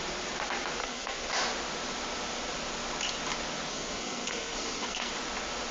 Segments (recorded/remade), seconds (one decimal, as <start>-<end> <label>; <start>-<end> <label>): 0.0-0.8 recorded; 0.8-1.3 remade; 1.3-3.7 recorded; 3.7-5.1 remade; 5.1-5.7 recorded